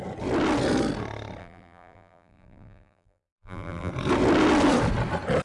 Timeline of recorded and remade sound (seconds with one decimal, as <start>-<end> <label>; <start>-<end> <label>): 0.0-1.4 recorded; 1.4-3.9 remade; 3.9-5.4 recorded